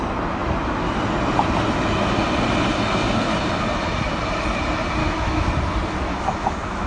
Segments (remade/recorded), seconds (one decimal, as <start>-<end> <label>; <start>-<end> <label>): 0.0-5.0 recorded; 5.0-5.5 remade; 5.5-6.1 recorded; 6.1-6.9 remade

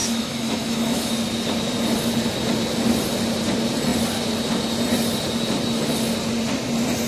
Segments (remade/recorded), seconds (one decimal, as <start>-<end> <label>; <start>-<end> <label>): 0.0-1.1 remade; 1.1-7.1 recorded

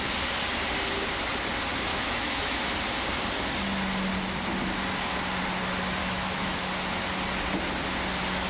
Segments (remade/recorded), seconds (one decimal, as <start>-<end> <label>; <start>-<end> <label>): 0.0-1.9 recorded; 1.9-2.6 remade; 2.6-6.0 recorded; 6.0-6.6 remade; 6.6-8.5 recorded